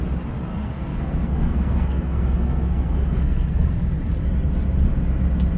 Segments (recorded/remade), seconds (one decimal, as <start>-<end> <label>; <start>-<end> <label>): 0.0-0.5 recorded; 0.5-3.9 remade; 3.9-5.6 recorded